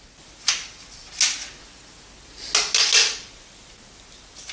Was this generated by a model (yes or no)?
no